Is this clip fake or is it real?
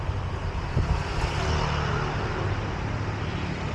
real